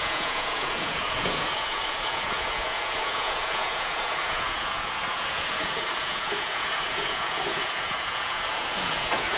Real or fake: fake